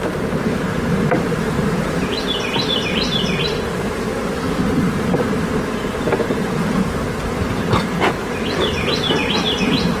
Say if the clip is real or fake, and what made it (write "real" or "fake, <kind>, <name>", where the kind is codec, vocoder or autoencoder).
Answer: fake, vocoder, BigVGAN v2